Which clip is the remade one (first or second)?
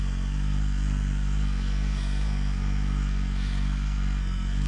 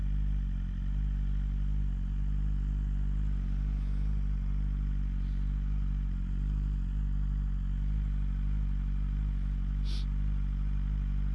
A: first